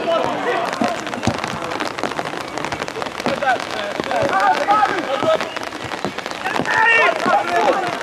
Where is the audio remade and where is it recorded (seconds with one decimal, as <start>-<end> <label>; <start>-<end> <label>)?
0.0-3.3 recorded; 3.3-5.4 remade; 5.4-8.0 recorded